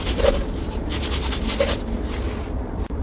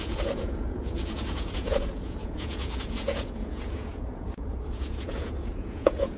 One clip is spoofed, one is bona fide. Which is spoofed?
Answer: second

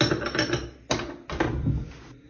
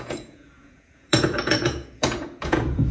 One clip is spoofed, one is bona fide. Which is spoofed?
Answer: second